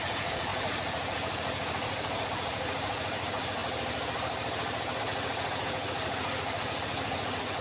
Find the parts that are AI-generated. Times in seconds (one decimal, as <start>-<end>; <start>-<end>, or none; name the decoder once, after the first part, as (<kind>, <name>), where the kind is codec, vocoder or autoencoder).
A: 0.0-3.6 (vocoder, Vocos); 5.0-7.6